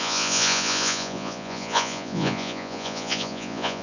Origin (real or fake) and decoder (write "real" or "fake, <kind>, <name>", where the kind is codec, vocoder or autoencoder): fake, vocoder, Vocos